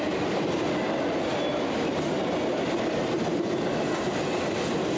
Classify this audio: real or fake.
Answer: real